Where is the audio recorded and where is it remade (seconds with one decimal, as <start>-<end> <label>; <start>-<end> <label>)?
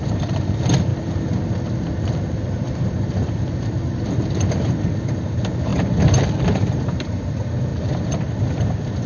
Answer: 0.0-0.9 remade; 0.9-2.0 recorded; 2.0-5.7 remade; 5.7-6.3 recorded; 6.3-7.7 remade; 7.7-8.5 recorded; 8.5-9.1 remade